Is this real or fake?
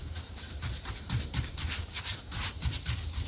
fake